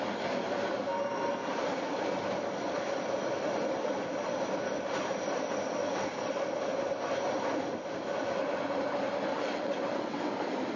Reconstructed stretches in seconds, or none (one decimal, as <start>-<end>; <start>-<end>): 9.3-10.3